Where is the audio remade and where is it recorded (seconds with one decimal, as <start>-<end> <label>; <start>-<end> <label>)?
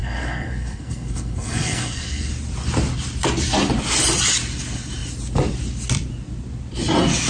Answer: 0.0-2.3 remade; 2.3-7.3 recorded